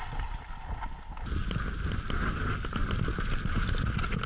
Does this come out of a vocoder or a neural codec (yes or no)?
no